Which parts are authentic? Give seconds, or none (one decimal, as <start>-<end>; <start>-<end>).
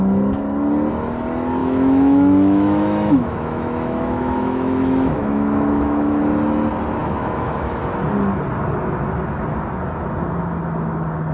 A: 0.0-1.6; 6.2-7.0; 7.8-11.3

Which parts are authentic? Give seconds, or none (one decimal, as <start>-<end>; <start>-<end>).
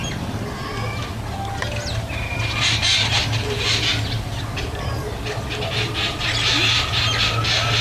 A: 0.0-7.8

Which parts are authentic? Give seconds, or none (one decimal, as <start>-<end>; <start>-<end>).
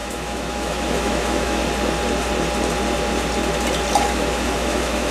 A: 1.6-4.1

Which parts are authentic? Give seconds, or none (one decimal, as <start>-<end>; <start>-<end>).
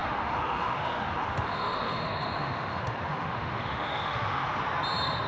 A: 4.6-5.3